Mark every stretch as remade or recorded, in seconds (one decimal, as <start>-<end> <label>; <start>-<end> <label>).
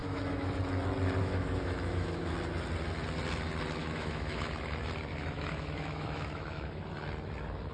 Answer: 0.0-0.6 remade; 0.6-1.2 recorded; 1.2-2.3 remade; 2.3-3.8 recorded; 3.8-4.5 remade; 4.5-5.1 recorded; 5.1-6.8 remade; 6.8-7.7 recorded